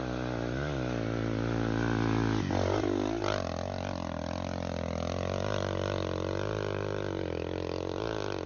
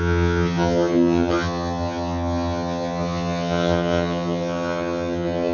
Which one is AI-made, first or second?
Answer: second